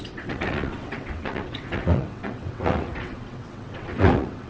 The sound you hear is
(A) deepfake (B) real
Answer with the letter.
A